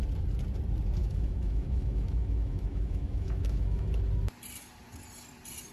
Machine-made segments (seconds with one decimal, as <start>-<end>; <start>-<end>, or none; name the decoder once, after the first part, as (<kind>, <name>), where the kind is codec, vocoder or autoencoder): 1.0-3.9 (autoencoder, DAC-VAE)